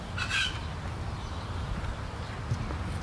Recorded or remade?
recorded